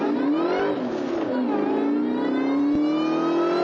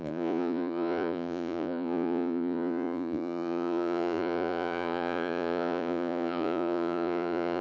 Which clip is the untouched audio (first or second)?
first